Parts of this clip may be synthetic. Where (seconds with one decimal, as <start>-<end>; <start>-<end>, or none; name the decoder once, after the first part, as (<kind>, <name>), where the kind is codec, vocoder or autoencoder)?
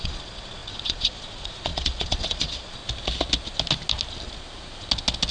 0.0-2.8 (vocoder, Vocos)